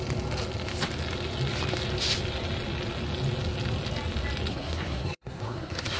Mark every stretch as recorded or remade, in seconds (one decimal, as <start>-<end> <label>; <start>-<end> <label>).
0.0-4.5 recorded; 4.5-6.0 remade